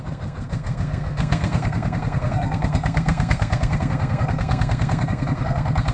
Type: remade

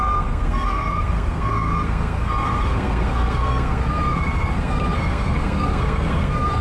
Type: remade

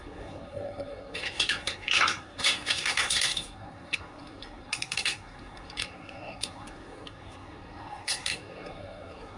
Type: remade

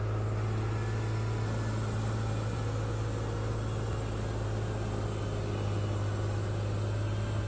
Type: recorded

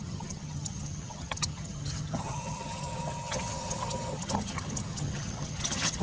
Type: remade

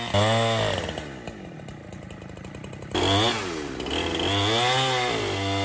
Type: recorded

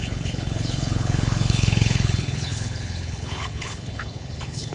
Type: remade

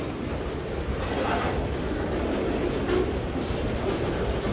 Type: recorded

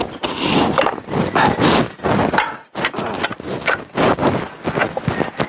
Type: recorded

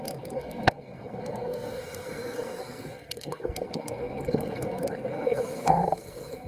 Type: remade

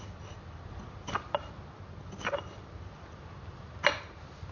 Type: recorded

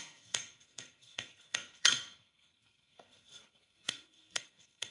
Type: remade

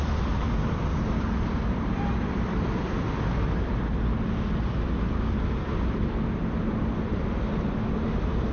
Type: remade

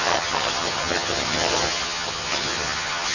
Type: remade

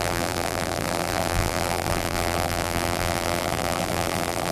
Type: remade